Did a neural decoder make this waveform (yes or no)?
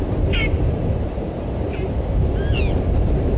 no